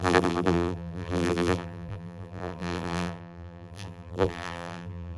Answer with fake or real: fake